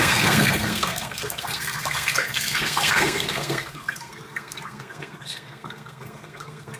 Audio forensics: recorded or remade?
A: remade